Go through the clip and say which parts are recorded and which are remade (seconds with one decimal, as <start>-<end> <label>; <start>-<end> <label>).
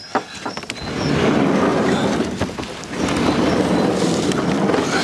0.0-5.0 recorded